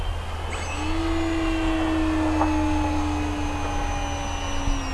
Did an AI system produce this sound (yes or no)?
no